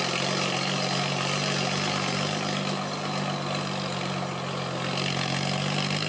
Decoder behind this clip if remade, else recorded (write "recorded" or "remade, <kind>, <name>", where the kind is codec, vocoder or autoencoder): recorded